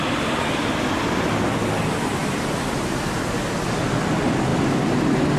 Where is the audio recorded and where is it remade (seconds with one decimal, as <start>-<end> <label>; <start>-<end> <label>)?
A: 0.0-5.4 recorded